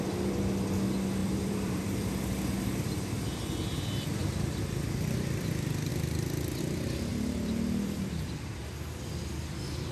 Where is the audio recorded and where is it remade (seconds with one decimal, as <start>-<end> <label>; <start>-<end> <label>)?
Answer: 0.0-1.2 recorded; 1.2-2.3 remade; 2.3-4.2 recorded; 4.2-5.5 remade; 5.5-7.1 recorded; 7.1-8.7 remade; 8.7-9.9 recorded

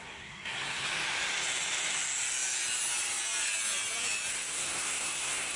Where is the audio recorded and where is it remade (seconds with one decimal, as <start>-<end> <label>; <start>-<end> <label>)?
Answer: 0.0-0.9 remade; 0.9-4.3 recorded; 4.3-5.6 remade

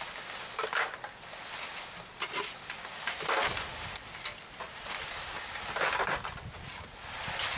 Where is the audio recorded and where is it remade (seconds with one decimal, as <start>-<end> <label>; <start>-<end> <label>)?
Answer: 0.0-7.6 recorded